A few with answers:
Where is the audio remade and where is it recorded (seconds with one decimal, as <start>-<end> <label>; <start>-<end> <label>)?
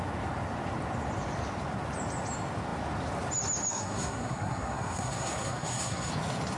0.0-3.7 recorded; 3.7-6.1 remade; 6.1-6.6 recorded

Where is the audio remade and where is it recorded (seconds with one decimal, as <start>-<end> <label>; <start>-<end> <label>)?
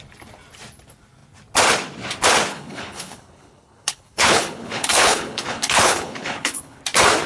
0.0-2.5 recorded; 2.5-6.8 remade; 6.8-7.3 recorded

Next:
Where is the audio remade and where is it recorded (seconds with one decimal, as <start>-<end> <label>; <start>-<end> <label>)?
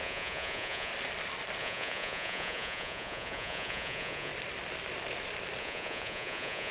0.0-0.9 remade; 0.9-1.6 recorded; 1.6-4.3 remade; 4.3-5.6 recorded; 5.6-6.7 remade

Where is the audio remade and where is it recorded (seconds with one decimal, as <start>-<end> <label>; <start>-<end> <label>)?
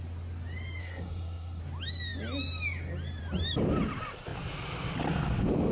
0.0-0.8 recorded; 0.8-1.6 remade; 1.6-5.7 recorded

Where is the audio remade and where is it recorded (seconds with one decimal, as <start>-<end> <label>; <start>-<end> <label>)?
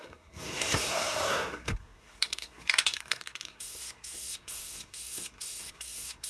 0.0-6.3 remade